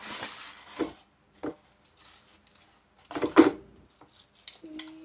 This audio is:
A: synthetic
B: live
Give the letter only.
B